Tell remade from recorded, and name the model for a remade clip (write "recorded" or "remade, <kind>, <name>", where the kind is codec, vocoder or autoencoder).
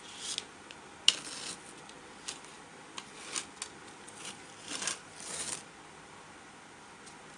recorded